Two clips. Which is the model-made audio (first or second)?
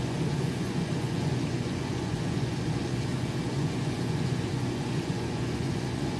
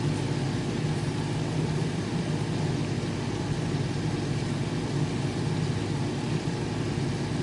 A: first